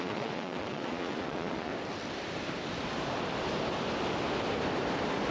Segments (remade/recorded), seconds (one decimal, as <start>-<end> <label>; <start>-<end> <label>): 0.0-1.7 remade; 1.7-5.3 recorded